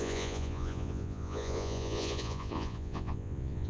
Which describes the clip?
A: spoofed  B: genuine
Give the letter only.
A